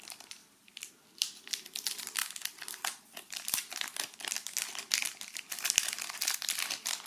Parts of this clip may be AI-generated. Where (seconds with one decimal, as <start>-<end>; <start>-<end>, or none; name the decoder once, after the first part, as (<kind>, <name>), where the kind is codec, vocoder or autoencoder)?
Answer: 0.0-7.1 (vocoder, BigVGAN v2)